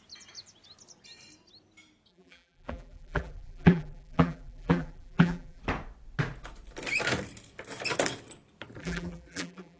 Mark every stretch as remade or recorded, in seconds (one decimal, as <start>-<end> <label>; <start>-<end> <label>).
0.0-2.1 recorded; 2.1-5.6 remade; 5.6-8.8 recorded; 8.8-9.8 remade